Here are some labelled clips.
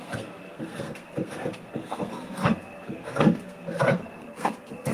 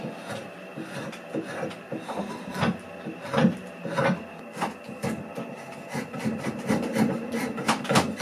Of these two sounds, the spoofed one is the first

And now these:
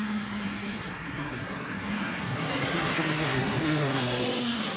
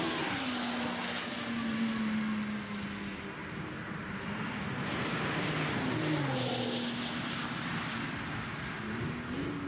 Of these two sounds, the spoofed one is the first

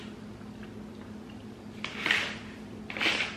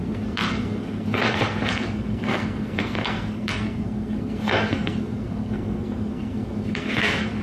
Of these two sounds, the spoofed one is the second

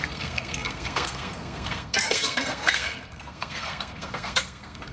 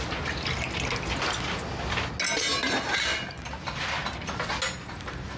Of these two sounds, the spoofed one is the first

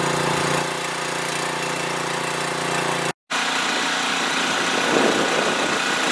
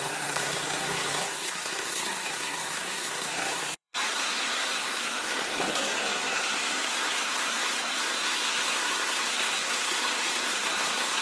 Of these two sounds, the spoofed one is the second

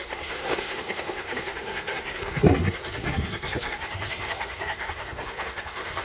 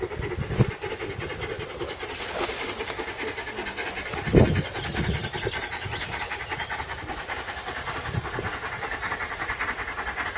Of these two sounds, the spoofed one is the first